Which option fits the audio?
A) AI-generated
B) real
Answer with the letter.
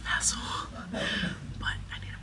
B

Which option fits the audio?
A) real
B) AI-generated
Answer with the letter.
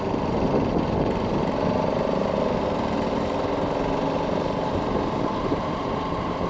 A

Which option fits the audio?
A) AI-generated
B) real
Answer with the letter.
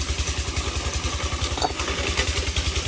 B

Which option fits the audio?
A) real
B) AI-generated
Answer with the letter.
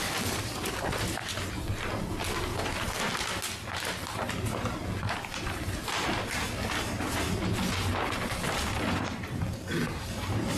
A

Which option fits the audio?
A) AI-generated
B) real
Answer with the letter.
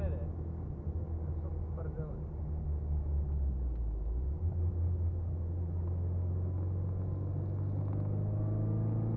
B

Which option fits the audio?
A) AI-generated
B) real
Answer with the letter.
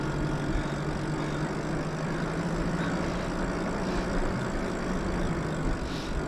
B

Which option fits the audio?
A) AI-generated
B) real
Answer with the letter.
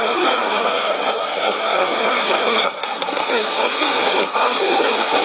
A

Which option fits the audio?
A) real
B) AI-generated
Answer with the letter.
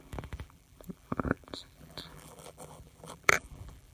B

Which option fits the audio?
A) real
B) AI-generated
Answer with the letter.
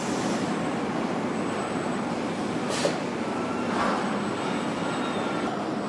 A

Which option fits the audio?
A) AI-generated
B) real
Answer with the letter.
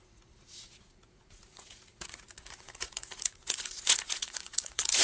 A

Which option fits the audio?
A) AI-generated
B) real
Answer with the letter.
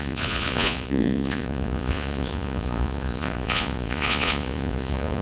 A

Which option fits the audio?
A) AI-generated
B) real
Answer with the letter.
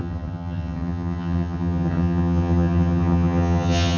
A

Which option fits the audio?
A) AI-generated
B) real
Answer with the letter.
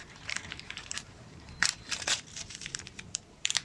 A